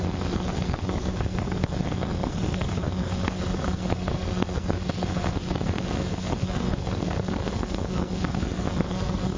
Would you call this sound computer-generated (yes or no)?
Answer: yes